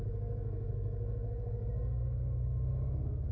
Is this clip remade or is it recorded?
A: remade